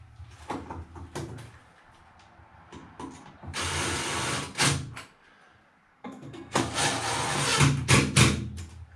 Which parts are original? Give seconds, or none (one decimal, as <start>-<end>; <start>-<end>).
0.0-5.9; 6.6-9.0